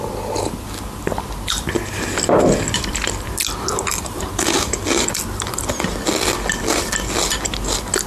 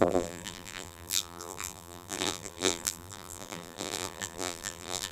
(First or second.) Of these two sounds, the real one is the first